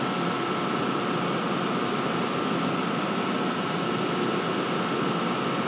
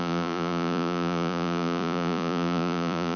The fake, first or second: second